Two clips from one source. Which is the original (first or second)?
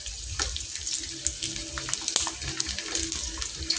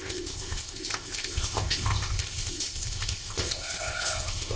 first